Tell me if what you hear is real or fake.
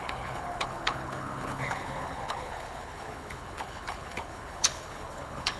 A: fake